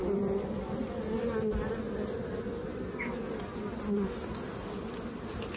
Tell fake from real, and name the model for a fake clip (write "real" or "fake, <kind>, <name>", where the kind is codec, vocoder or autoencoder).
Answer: real